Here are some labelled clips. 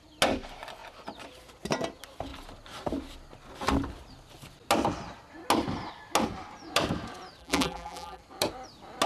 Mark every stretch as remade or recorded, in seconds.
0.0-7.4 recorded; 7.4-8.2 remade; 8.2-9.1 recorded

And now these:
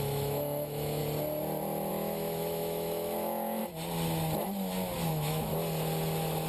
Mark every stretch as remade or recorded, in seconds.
0.0-1.0 remade; 1.0-1.9 recorded; 1.9-3.6 remade; 3.6-5.1 recorded; 5.1-5.5 remade; 5.5-6.5 recorded